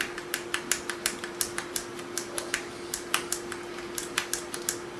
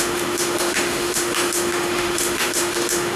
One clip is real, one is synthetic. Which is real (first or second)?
first